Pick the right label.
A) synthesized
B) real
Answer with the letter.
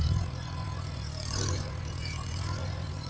A